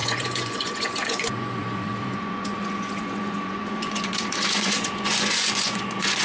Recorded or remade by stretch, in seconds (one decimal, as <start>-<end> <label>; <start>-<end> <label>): 0.0-6.2 remade